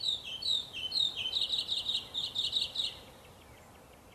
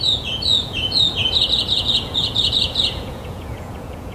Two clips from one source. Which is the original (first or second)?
first